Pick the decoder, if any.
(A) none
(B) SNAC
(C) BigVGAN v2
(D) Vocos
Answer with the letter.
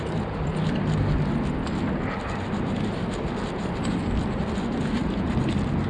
A